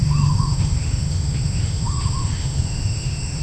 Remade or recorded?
remade